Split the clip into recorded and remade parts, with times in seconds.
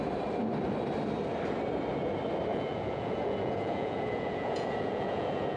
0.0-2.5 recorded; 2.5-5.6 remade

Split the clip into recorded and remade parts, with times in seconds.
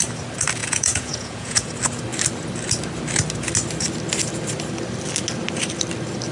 0.0-0.6 recorded; 0.6-1.7 remade; 1.7-6.3 recorded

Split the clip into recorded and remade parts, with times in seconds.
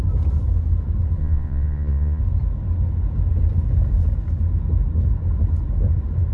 0.0-1.2 recorded; 1.2-2.2 remade; 2.2-6.3 recorded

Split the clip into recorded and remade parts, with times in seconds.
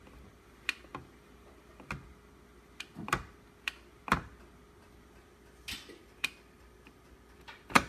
0.0-6.0 recorded; 6.0-7.4 remade; 7.4-7.9 recorded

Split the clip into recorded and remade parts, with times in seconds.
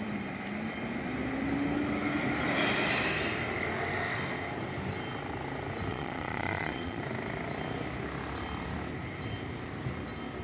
0.0-5.9 recorded; 5.9-7.0 remade; 7.0-10.4 recorded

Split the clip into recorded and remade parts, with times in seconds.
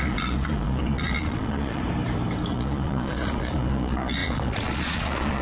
0.0-1.8 remade; 1.8-2.5 recorded; 2.5-5.4 remade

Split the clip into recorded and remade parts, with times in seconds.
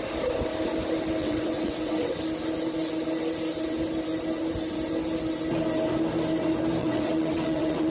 0.0-1.2 recorded; 1.2-2.2 remade; 2.2-6.8 recorded; 6.8-7.9 remade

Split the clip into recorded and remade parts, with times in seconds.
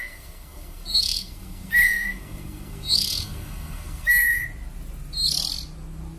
0.0-4.4 remade; 4.4-6.2 recorded